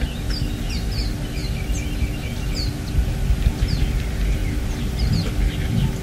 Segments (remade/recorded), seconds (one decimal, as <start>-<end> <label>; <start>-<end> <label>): 0.0-6.0 recorded